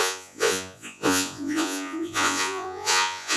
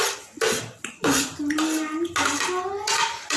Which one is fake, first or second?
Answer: first